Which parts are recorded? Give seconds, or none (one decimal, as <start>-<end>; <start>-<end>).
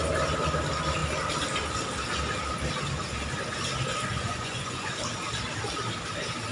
0.0-4.1; 4.9-6.5